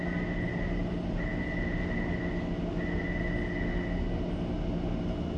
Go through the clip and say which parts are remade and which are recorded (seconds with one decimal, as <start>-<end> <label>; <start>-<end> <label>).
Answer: 0.0-5.4 recorded